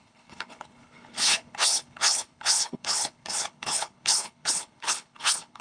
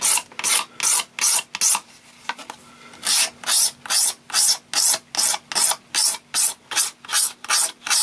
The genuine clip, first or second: second